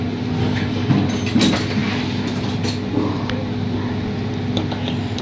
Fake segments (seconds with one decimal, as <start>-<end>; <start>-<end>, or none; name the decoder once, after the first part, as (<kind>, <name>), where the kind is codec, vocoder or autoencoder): 0.4-0.9 (codec, DAC)